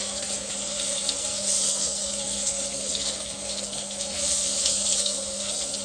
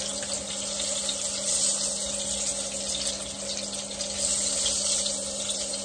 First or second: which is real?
second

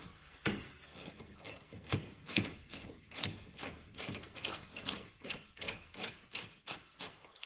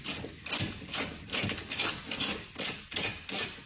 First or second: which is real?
second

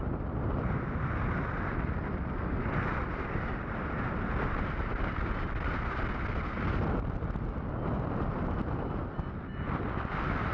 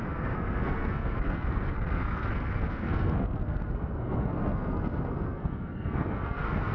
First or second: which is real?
first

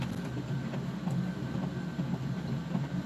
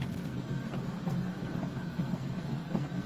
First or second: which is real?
first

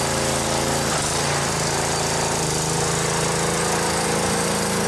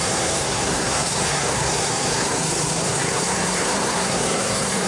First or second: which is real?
first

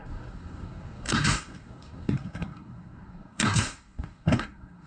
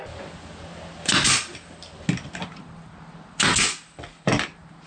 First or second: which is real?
second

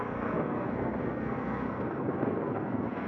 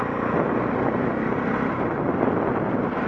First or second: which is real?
second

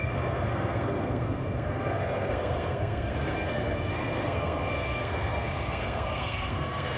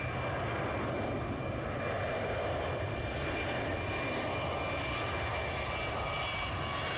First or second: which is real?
second